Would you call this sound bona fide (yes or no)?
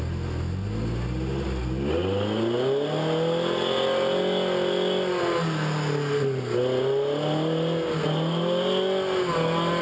yes